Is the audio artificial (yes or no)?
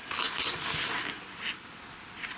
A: no